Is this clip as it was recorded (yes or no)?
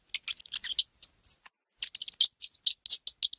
yes